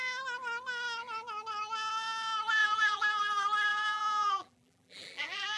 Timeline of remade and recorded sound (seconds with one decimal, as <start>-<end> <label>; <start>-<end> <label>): 0.0-2.6 recorded; 2.6-3.2 remade; 3.2-3.7 recorded; 3.7-5.6 remade

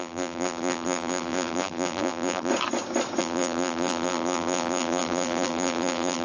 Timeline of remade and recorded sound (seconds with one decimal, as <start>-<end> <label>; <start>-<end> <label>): 0.0-2.5 remade; 2.5-3.2 recorded; 3.2-6.2 remade

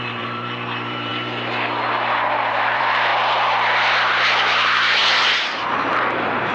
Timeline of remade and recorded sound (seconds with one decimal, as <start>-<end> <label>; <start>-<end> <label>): 0.0-1.1 remade; 1.1-2.5 recorded; 2.5-3.1 remade; 3.1-4.1 recorded; 4.1-6.5 remade

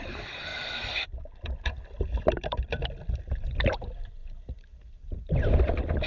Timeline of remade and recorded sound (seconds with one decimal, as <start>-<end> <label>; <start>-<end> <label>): 0.0-4.2 remade; 4.2-5.3 recorded; 5.3-6.1 remade

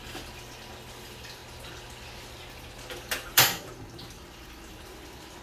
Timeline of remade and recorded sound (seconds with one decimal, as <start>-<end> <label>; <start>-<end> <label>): 0.0-5.4 recorded